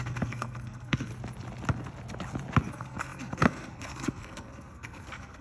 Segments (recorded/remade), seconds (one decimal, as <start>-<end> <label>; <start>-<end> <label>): 0.0-1.1 remade; 1.1-2.7 recorded; 2.7-5.4 remade

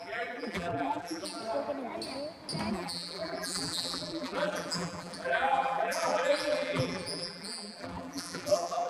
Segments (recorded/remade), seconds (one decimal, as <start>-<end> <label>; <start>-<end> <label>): 0.0-1.4 remade; 1.4-2.7 recorded; 2.7-8.9 remade

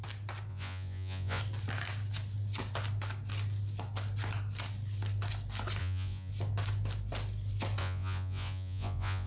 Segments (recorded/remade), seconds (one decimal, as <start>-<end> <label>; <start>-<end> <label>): 0.0-0.5 recorded; 0.5-1.4 remade; 1.4-5.8 recorded; 5.8-6.3 remade; 6.3-7.8 recorded; 7.8-9.3 remade

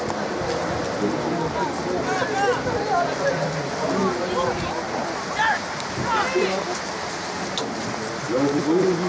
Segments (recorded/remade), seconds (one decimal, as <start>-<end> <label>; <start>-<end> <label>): 0.0-9.1 recorded

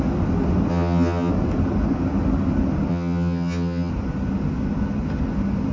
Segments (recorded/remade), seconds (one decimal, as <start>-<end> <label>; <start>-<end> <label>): 0.0-0.7 recorded; 0.7-1.3 remade; 1.3-2.9 recorded; 2.9-3.9 remade; 3.9-5.7 recorded